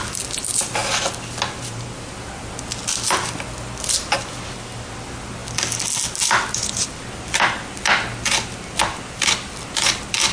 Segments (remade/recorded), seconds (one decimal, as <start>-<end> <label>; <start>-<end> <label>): 0.0-10.3 recorded